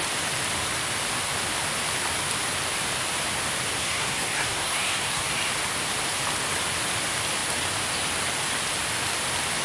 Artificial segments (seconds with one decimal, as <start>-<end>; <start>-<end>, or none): 3.8-5.2